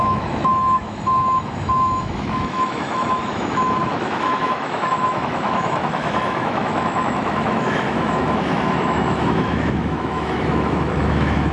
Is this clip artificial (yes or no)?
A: yes